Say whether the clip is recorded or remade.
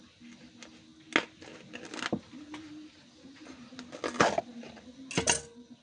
recorded